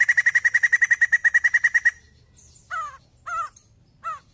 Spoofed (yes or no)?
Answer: no